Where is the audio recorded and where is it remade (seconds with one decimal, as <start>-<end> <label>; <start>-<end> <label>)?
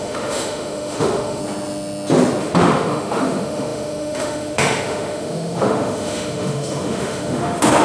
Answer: 0.0-1.4 remade; 1.4-2.4 recorded; 2.4-7.8 remade